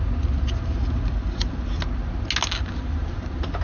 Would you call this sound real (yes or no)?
yes